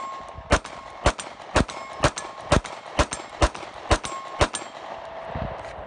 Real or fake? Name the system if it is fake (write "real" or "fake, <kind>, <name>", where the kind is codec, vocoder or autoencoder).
real